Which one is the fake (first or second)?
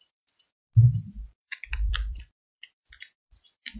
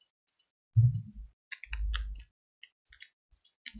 first